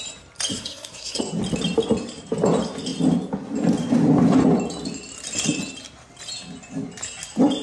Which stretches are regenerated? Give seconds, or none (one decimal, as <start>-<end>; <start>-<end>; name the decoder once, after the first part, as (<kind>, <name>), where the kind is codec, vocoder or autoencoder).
0.5-1.2 (codec, SNAC)